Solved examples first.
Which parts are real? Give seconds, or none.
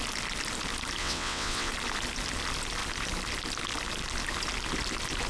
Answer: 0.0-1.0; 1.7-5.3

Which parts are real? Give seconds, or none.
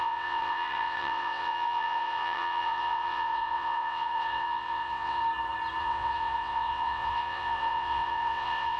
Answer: 5.2-5.8